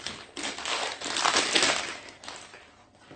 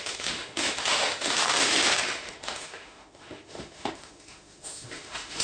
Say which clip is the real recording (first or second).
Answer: first